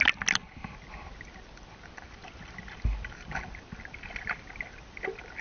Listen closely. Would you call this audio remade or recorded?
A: recorded